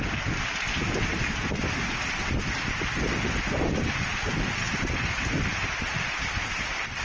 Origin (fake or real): real